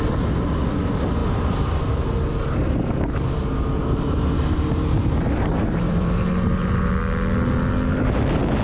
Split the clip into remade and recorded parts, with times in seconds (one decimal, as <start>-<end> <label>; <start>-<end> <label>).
0.0-1.2 recorded; 1.2-1.8 remade; 1.8-3.8 recorded; 3.8-6.9 remade; 6.9-8.6 recorded